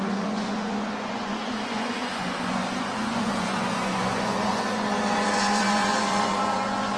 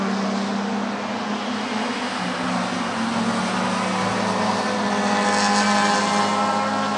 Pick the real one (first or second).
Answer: second